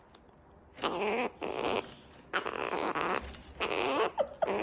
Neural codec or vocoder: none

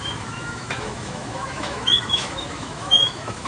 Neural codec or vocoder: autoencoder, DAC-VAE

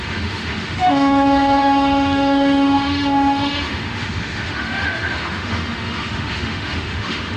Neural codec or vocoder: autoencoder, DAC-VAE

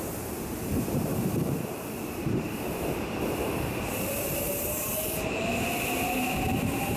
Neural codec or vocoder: vocoder, BigVGAN v2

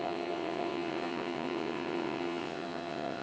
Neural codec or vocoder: vocoder, WaveNeXt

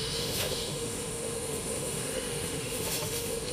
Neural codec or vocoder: autoencoder, DAC-VAE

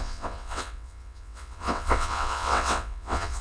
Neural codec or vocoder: vocoder, WaveNeXt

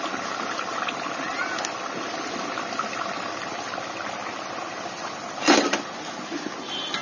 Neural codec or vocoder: none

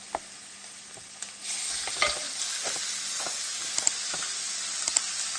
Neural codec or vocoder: none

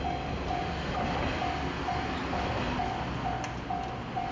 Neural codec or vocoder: none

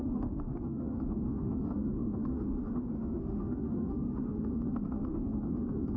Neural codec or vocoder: autoencoder, DAC-VAE